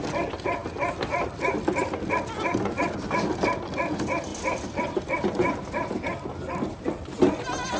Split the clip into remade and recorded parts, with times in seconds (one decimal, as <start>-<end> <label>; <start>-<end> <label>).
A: 0.0-7.8 recorded